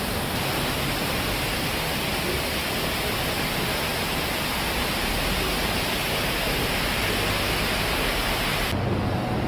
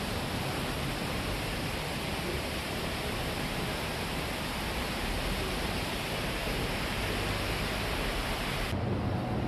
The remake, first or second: second